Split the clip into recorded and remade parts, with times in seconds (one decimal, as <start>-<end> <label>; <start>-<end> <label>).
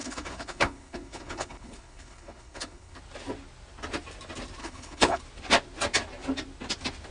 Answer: 0.0-3.0 remade; 3.0-4.6 recorded; 4.6-5.2 remade; 5.2-7.1 recorded